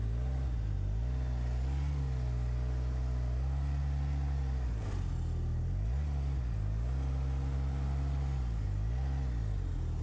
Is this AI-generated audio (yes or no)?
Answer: no